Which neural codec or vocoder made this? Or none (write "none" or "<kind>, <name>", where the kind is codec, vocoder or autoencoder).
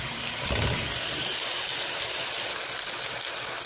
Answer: none